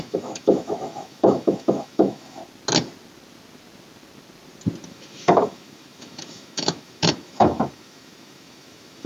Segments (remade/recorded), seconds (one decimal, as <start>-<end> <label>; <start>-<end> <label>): 0.0-2.4 remade; 2.4-4.9 recorded; 4.9-9.1 remade